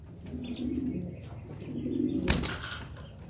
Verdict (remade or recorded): recorded